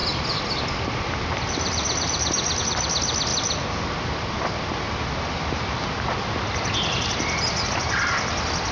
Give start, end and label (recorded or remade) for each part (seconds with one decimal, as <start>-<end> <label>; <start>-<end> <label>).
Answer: 0.0-8.7 recorded